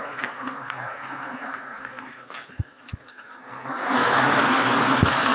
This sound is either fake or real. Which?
fake